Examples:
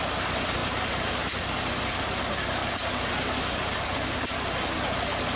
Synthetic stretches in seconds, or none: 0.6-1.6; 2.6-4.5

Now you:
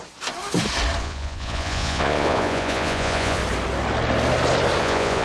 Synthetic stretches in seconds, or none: 1.0-3.4; 4.8-5.2

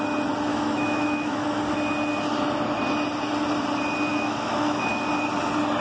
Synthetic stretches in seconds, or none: 0.5-1.6; 4.1-5.0

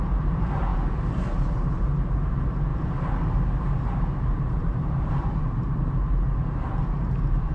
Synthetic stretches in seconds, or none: 0.0-7.5

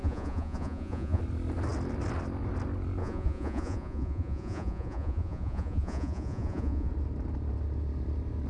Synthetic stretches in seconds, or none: 0.0-1.2; 3.0-6.9

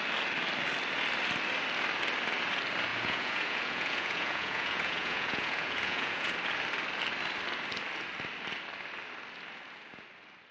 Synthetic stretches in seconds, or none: 2.9-6.3

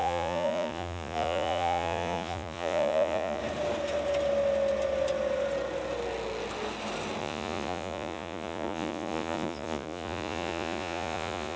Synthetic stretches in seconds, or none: 0.0-3.4; 7.2-11.6